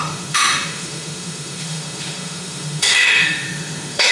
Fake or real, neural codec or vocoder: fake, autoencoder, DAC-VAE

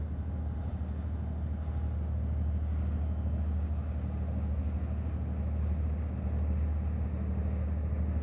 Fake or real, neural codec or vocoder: real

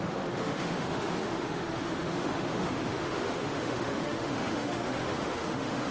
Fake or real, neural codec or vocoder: fake, autoencoder, DAC-VAE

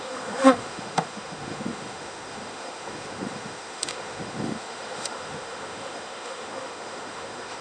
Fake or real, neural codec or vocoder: fake, autoencoder, DAC-VAE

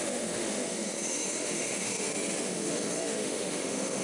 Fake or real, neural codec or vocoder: fake, autoencoder, DAC-VAE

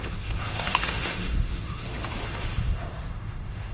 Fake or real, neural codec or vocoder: fake, autoencoder, DAC-VAE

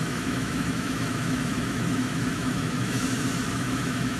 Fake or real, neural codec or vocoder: fake, autoencoder, DAC-VAE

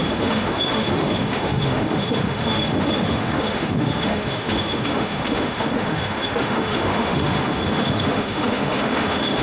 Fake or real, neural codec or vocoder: fake, autoencoder, DAC-VAE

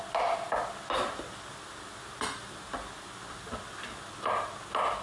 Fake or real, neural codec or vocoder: real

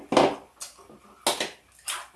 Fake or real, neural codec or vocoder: real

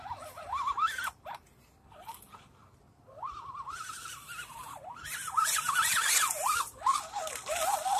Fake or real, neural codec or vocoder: real